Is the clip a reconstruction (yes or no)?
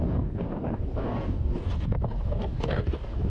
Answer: yes